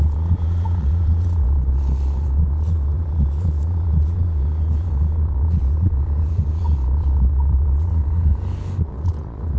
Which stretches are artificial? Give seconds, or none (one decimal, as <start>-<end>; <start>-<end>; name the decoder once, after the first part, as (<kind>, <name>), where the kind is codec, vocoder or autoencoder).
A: 0.0-8.3 (vocoder, Vocos); 8.8-9.6